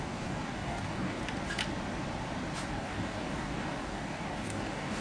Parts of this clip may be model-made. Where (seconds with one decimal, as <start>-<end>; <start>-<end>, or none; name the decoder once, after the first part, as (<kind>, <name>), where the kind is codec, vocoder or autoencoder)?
0.0-1.2 (codec, DAC); 2.7-5.0